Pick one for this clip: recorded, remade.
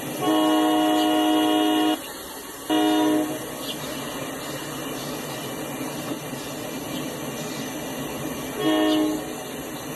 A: recorded